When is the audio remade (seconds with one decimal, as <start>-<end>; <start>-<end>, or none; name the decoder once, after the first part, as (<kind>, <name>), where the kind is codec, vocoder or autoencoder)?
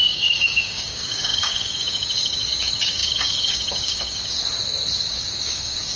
0.0-4.4 (codec, DAC); 5.0-6.0